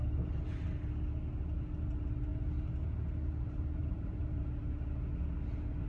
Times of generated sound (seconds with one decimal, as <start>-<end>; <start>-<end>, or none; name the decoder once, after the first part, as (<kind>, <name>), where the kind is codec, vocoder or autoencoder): 3.8-4.4 (vocoder, BigVGAN v2)